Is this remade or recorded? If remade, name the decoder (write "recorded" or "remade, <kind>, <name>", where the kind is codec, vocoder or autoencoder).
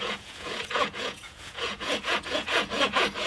remade, vocoder, Vocos